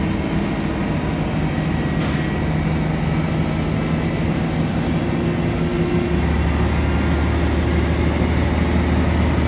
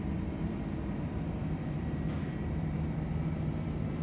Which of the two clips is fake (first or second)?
second